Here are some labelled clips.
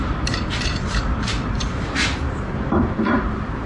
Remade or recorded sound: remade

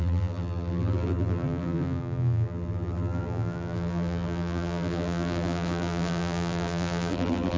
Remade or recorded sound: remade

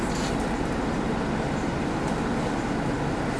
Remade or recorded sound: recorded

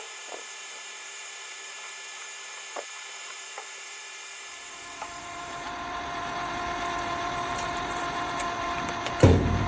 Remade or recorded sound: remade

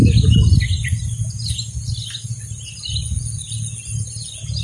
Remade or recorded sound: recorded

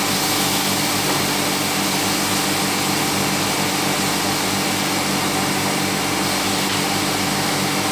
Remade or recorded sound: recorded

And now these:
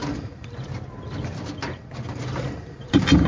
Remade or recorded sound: remade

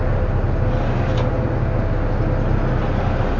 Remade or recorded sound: recorded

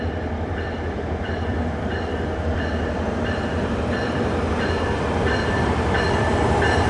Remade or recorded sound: remade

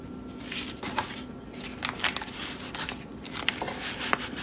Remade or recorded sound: recorded